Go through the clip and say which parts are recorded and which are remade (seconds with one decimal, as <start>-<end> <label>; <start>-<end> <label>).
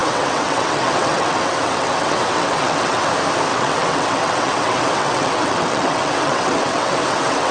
0.0-3.1 remade; 3.1-3.5 recorded; 3.5-7.5 remade